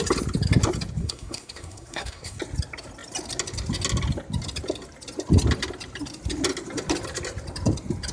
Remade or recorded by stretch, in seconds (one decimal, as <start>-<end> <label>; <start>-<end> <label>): 0.0-1.0 recorded; 1.0-2.4 remade; 2.4-8.1 recorded